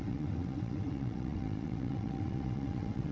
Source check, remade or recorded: remade